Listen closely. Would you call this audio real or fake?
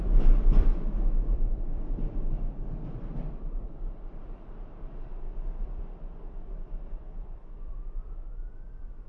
fake